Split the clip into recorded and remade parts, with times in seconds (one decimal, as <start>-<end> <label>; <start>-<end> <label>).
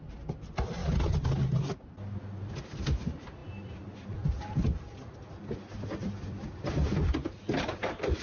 0.0-3.4 recorded; 3.4-8.2 remade